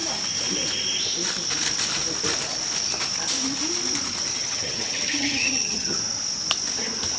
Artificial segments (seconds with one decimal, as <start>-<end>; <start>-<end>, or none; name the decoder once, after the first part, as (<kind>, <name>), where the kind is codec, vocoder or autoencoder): 4.3-6.0 (vocoder, HiFi-GAN)